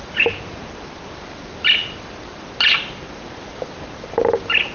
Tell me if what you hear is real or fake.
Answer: fake